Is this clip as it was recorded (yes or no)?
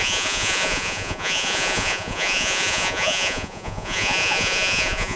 no